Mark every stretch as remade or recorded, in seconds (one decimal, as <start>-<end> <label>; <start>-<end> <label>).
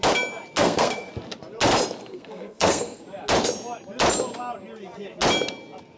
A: 0.0-0.6 recorded; 0.6-1.1 remade; 1.1-2.1 recorded; 2.1-3.0 remade; 3.0-6.0 recorded